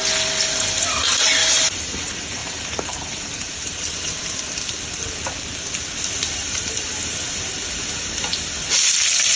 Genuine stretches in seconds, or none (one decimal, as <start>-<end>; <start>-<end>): 0.0-1.4; 1.9-2.4; 4.4-6.4; 6.9-9.4